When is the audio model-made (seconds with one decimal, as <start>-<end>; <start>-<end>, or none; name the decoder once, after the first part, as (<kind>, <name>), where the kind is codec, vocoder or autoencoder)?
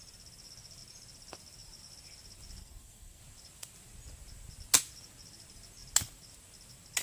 2.6-3.2 (codec, SNAC)